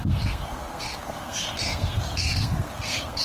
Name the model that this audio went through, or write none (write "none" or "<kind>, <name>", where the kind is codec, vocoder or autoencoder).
codec, SNAC